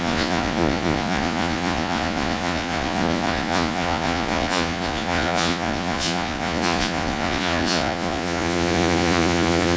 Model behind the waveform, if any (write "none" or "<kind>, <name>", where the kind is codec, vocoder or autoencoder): vocoder, Vocos